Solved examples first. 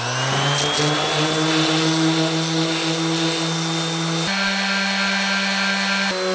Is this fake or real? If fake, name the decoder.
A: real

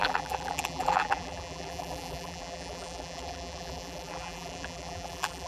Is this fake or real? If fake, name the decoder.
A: fake, vocoder, BigVGAN v2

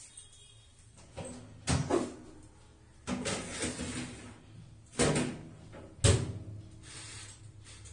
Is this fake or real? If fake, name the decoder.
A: real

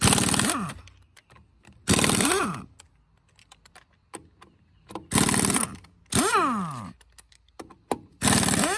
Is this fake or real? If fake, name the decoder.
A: real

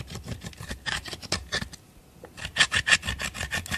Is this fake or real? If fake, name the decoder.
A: real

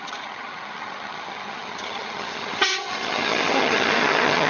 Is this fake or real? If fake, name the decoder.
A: fake, vocoder, HiFi-GAN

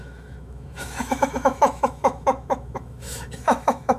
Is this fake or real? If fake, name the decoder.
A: fake, autoencoder, DAC-VAE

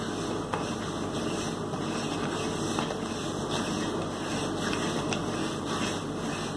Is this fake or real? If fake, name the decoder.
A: real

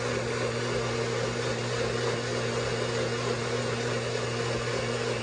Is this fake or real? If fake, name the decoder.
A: real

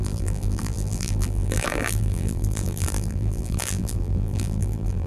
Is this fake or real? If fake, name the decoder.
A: fake, vocoder, BigVGAN v2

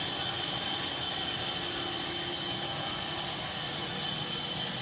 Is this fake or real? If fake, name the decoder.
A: real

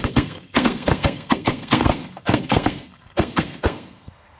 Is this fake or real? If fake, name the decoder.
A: fake, codec, SNAC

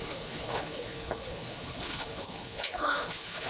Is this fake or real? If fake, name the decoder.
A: fake, codec, HILCodec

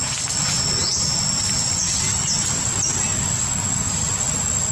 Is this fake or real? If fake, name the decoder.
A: real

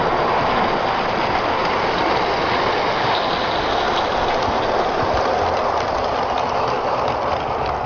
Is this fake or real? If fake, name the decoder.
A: real